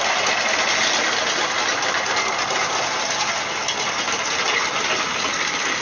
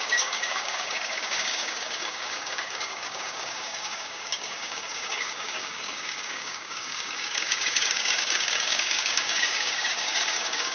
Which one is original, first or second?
first